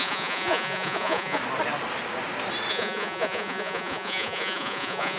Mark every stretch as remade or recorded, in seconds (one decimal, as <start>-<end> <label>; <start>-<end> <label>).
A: 0.0-1.4 remade; 1.4-2.7 recorded; 2.7-5.2 remade

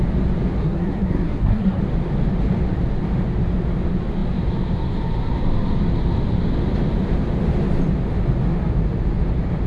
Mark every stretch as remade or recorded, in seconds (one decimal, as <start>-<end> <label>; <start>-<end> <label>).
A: 0.0-0.6 recorded; 0.6-1.8 remade; 1.8-9.7 recorded

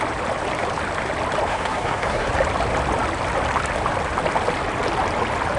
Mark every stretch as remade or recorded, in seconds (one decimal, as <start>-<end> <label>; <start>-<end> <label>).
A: 0.0-1.5 recorded; 1.5-2.3 remade; 2.3-5.6 recorded

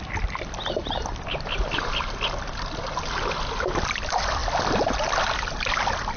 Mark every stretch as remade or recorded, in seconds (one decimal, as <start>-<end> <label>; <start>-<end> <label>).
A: 0.0-6.2 recorded

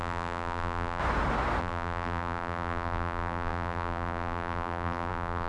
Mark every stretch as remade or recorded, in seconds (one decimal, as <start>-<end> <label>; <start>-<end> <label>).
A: 0.0-1.0 remade; 1.0-1.6 recorded; 1.6-5.5 remade

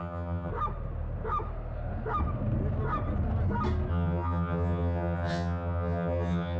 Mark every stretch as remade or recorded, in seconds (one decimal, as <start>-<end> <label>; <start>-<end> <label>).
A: 0.0-0.5 remade; 0.5-3.9 recorded; 3.9-6.6 remade

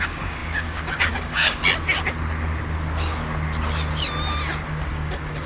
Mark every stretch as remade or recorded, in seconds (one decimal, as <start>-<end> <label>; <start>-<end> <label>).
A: 0.0-1.6 remade; 1.6-4.9 recorded; 4.9-5.5 remade